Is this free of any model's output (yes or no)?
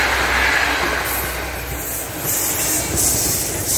yes